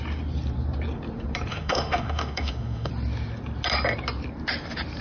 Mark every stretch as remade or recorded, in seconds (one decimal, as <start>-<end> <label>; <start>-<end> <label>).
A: 0.0-1.5 recorded; 1.5-2.9 remade; 2.9-5.0 recorded